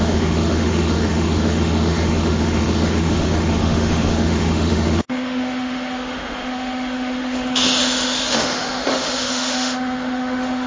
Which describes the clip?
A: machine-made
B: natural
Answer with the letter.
A